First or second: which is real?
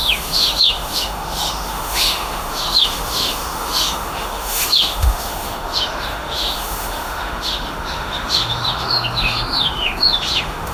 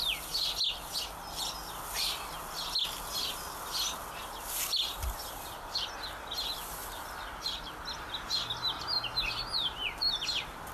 second